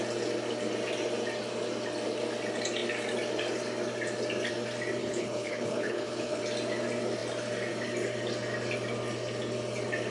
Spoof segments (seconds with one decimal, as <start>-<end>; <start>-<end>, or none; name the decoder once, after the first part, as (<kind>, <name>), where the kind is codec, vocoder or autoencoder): 5.0-6.4 (codec, HILCodec)